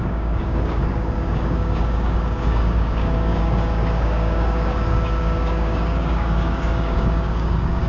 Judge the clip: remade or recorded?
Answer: remade